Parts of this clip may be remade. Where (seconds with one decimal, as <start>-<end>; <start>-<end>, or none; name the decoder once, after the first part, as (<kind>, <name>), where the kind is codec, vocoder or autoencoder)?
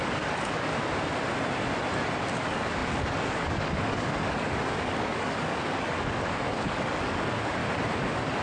0.0-0.7 (codec, DAC); 2.3-7.6